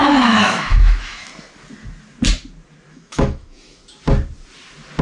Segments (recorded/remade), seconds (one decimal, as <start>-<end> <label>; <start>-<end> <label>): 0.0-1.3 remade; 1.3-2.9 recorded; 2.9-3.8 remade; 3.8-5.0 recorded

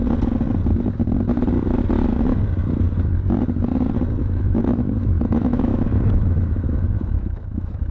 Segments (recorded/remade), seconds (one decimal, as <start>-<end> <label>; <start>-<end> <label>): 0.0-4.2 recorded; 4.2-7.9 remade

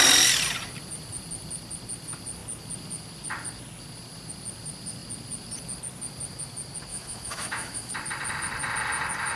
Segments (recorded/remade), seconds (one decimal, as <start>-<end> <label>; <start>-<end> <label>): 0.0-6.9 recorded; 6.9-7.9 remade; 7.9-9.4 recorded